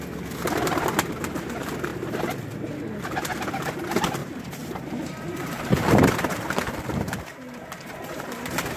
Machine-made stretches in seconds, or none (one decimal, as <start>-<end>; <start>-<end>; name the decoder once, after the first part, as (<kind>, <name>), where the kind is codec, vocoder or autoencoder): 4.2-8.8 (vocoder, BigVGAN v2)